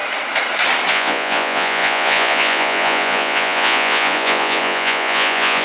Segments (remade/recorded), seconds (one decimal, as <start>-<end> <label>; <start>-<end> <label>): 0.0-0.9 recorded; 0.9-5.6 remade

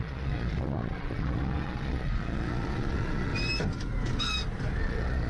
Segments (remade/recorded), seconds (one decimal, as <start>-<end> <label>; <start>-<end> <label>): 0.0-3.3 remade; 3.3-4.8 recorded; 4.8-5.3 remade

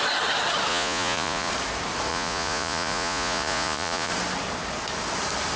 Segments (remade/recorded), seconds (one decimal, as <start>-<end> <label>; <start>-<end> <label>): 0.0-0.7 recorded; 0.7-1.5 remade; 1.5-2.1 recorded; 2.1-4.1 remade; 4.1-5.6 recorded

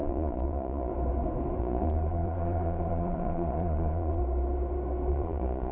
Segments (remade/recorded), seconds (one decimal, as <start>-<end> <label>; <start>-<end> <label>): 0.0-0.9 remade; 0.9-1.6 recorded; 1.6-4.2 remade; 4.2-5.1 recorded; 5.1-5.7 remade